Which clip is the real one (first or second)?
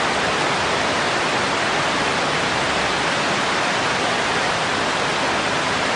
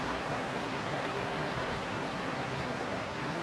first